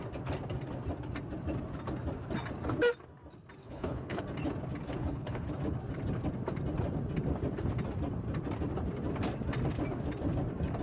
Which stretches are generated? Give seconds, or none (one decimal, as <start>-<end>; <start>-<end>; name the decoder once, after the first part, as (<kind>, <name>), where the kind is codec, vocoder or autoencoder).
3.6-4.2 (codec, HILCodec); 5.0-5.5